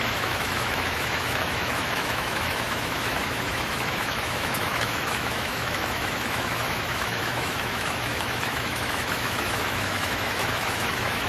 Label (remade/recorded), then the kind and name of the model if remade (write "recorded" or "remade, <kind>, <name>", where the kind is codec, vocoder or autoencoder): remade, autoencoder, DAC-VAE